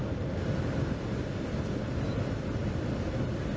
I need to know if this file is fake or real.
real